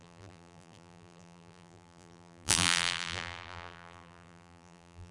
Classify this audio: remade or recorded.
remade